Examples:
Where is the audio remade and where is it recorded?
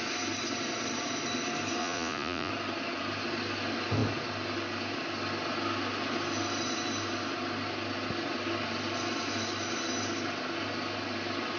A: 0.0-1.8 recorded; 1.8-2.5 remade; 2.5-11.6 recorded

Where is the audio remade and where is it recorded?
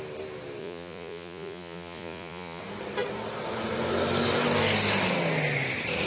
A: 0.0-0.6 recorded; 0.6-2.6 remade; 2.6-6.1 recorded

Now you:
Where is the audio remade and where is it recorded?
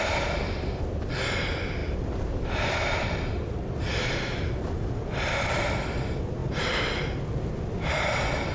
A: 0.0-8.5 recorded